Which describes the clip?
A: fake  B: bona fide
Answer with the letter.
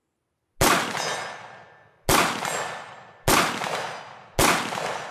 B